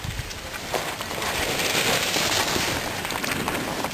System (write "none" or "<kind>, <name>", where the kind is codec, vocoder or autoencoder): none